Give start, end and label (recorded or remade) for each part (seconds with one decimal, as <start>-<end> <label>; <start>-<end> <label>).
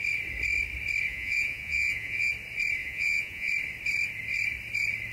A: 0.0-1.1 recorded; 1.1-2.3 remade; 2.3-2.8 recorded; 2.8-3.5 remade; 3.5-5.1 recorded